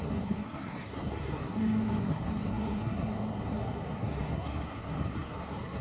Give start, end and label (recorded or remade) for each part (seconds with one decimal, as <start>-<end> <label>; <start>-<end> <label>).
0.0-5.8 remade